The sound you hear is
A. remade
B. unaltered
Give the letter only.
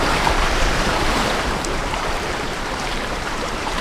A